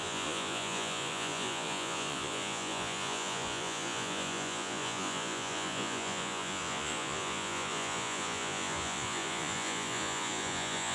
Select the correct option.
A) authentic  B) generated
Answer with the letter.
B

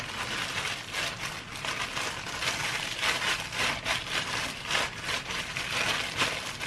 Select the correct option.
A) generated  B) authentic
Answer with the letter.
B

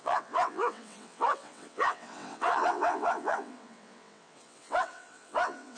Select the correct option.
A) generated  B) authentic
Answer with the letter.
A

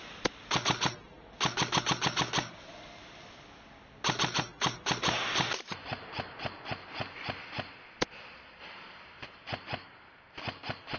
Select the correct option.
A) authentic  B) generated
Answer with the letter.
A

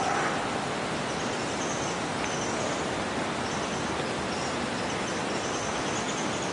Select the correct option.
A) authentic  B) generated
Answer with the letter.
A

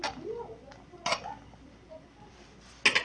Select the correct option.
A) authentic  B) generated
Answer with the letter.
A